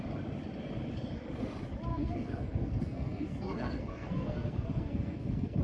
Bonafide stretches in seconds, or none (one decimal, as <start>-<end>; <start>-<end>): 0.0-1.9